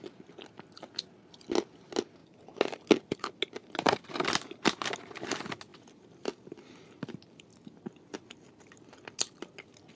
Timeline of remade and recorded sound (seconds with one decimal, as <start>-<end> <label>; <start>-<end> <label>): 0.0-10.0 recorded